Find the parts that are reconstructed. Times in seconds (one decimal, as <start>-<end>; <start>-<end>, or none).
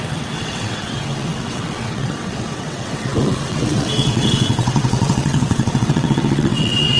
0.0-7.0